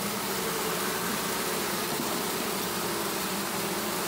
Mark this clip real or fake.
fake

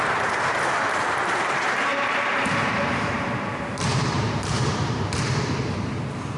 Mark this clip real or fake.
fake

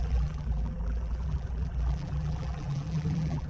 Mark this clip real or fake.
fake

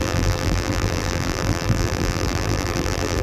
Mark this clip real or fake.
fake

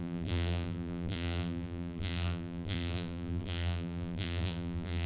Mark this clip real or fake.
fake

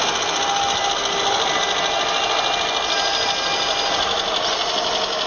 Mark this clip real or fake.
real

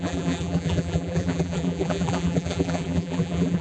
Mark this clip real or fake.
fake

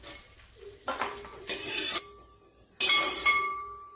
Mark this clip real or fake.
real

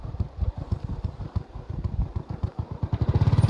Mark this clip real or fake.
fake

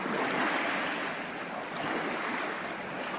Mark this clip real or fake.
real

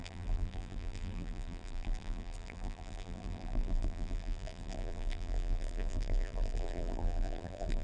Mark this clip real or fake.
fake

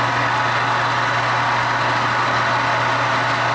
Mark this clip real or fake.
real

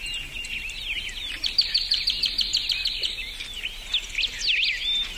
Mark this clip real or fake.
real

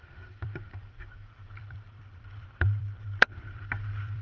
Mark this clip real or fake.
fake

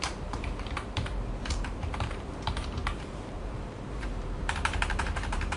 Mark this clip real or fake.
fake